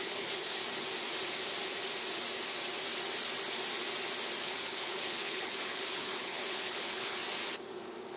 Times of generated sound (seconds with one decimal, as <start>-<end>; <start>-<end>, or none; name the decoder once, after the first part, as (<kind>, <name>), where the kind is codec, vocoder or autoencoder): 0.0-0.6 (codec, HILCodec); 4.4-7.2